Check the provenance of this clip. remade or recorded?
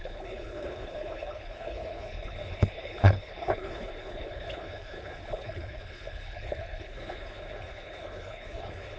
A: remade